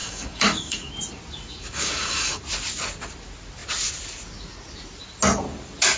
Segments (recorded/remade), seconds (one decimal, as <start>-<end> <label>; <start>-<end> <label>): 0.0-0.9 remade; 0.9-1.6 recorded; 1.6-2.4 remade; 2.4-6.0 recorded